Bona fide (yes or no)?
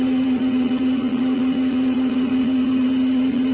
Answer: no